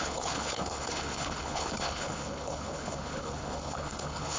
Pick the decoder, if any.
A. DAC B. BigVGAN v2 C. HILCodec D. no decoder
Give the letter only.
C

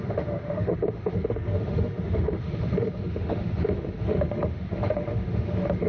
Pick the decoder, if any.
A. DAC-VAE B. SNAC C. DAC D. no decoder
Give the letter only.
A